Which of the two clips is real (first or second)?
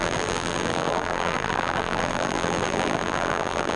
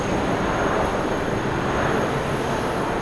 second